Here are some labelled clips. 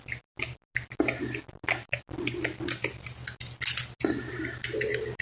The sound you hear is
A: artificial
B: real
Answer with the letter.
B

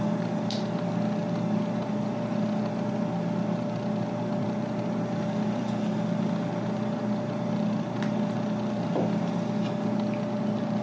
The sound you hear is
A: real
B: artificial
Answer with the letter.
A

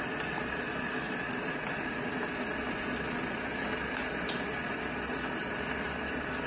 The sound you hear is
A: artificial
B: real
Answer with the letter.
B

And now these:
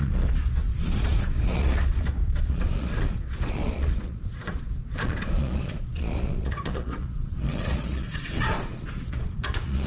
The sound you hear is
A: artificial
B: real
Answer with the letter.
A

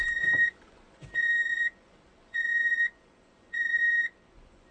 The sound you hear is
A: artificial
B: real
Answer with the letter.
A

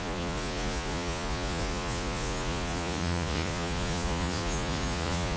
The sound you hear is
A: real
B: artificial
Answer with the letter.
B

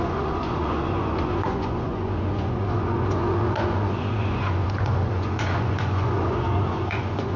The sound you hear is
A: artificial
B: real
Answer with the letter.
A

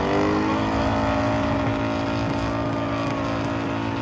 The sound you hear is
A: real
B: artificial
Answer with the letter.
A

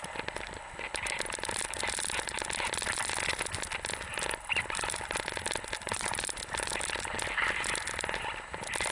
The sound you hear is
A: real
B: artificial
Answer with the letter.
A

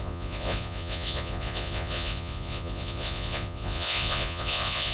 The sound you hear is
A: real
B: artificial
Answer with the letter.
B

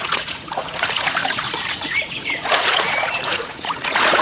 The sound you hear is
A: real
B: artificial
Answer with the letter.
B